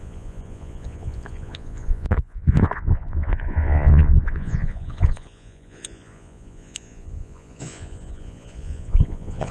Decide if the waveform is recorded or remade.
remade